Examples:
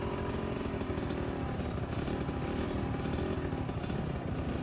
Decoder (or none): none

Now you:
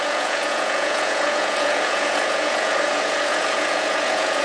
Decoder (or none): vocoder, Vocos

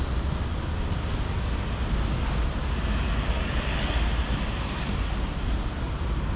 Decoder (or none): none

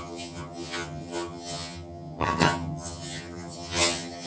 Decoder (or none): vocoder, HiFi-GAN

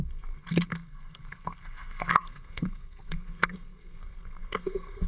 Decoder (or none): codec, SNAC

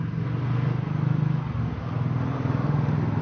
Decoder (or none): none